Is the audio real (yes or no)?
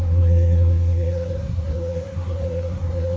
no